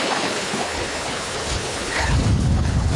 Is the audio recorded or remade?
remade